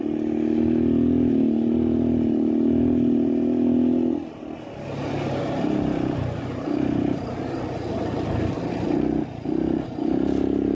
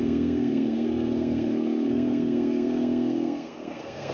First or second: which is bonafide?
first